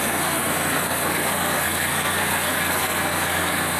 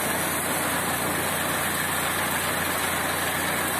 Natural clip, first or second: second